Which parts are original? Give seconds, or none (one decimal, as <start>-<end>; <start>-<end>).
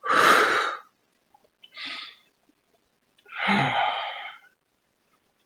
1.1-3.5